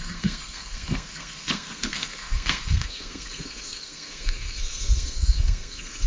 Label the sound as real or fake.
fake